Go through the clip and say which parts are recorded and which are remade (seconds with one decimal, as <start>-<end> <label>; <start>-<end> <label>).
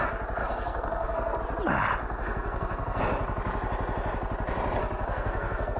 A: 0.0-0.4 recorded; 0.4-1.4 remade; 1.4-2.0 recorded; 2.0-3.0 remade; 3.0-4.8 recorded; 4.8-5.8 remade